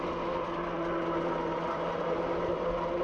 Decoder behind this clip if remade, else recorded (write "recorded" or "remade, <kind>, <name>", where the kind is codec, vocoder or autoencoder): recorded